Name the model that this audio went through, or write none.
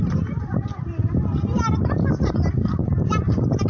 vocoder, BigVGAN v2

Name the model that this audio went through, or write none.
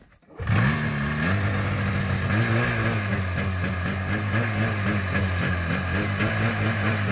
none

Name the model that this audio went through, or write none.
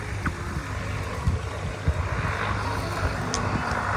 none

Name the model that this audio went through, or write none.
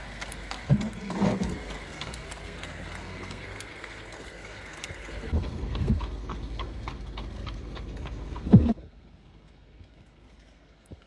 codec, SNAC